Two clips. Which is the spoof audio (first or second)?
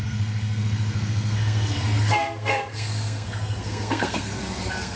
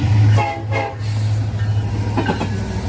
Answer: first